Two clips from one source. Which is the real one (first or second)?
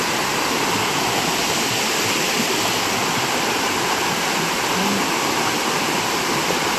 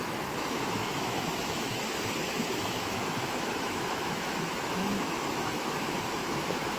first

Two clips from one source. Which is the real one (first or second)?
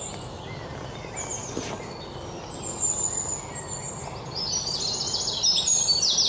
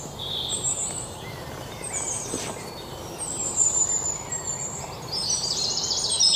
first